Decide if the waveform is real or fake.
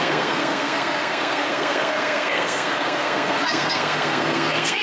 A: fake